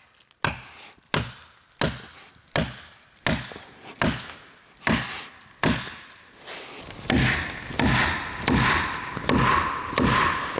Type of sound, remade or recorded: recorded